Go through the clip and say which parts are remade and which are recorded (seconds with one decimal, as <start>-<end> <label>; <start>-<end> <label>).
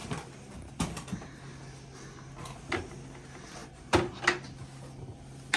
0.0-5.6 recorded